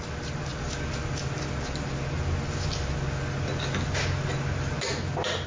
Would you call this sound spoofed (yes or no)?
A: no